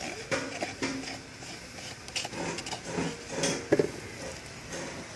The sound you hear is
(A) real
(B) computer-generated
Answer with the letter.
A